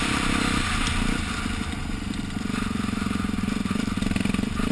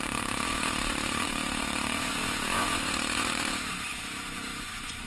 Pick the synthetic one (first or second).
second